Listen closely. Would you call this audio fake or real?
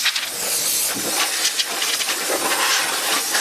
real